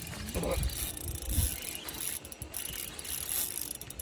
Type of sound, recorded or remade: recorded